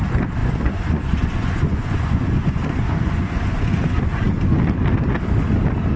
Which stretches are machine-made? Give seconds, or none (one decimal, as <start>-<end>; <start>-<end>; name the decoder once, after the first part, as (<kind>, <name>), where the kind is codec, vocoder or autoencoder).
0.4-4.0 (vocoder, Vocos)